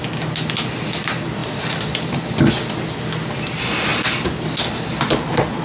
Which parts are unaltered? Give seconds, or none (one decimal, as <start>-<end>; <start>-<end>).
0.0-1.4; 2.5-5.6